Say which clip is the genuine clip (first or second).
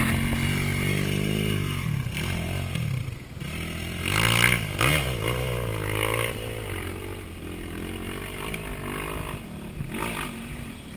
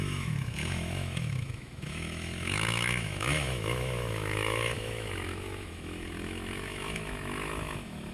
first